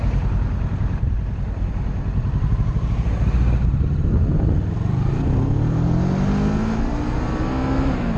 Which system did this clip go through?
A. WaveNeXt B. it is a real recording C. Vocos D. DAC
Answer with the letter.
B